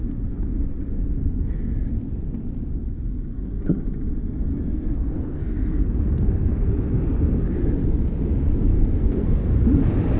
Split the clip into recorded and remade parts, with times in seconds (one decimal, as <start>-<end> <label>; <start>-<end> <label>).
0.0-4.5 recorded; 4.5-6.7 remade; 6.7-8.7 recorded; 8.7-9.5 remade; 9.5-10.2 recorded